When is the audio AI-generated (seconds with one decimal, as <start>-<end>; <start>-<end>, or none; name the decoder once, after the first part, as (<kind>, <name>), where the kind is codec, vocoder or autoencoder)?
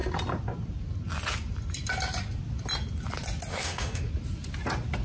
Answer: 3.5-4.1 (autoencoder, DAC-VAE)